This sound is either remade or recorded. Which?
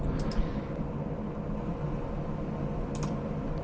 recorded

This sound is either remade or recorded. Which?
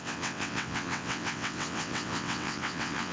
remade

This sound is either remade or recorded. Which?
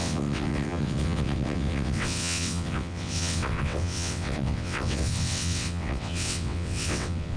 remade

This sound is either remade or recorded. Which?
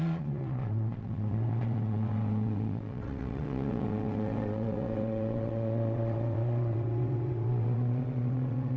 remade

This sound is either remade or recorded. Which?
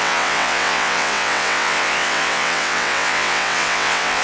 remade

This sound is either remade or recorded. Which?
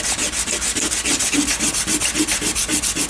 recorded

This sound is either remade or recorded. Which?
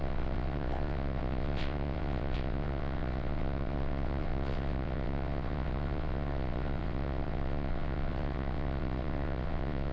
remade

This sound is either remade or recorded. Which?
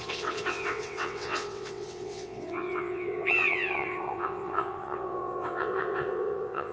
remade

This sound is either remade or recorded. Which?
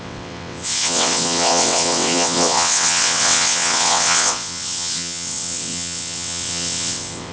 remade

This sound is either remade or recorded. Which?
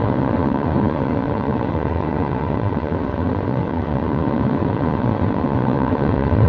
remade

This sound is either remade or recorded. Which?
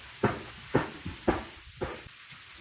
recorded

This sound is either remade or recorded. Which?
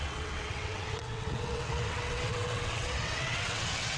remade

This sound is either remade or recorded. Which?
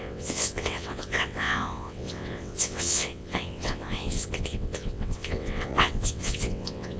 remade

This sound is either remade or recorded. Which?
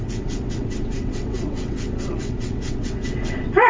remade